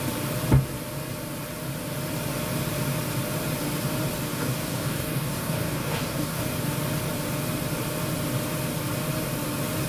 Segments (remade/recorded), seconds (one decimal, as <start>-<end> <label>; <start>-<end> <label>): 0.0-4.3 recorded; 4.3-6.4 remade; 6.4-9.9 recorded